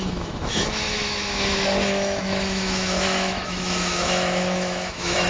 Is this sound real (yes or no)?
no